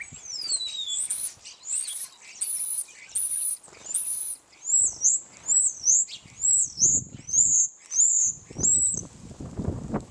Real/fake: real